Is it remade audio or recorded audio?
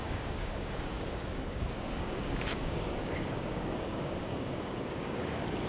remade